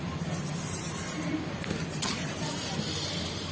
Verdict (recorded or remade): recorded